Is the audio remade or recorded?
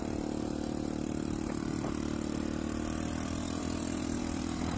remade